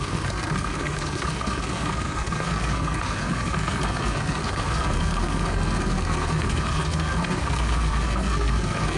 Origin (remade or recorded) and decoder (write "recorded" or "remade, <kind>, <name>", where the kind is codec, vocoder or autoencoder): remade, codec, SNAC